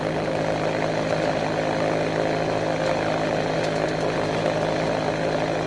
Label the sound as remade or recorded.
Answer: recorded